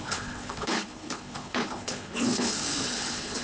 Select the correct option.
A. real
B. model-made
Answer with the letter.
B